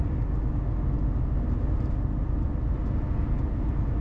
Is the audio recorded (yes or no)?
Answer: yes